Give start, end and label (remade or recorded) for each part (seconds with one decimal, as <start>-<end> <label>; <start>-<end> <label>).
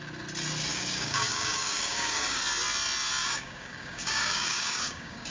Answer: 0.0-0.7 recorded; 0.7-2.4 remade; 2.4-3.2 recorded; 3.2-5.3 remade